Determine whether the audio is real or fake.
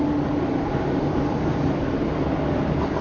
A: real